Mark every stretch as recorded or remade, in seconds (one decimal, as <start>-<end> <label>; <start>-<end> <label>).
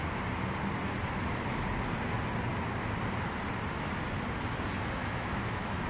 0.0-5.0 recorded; 5.0-5.9 remade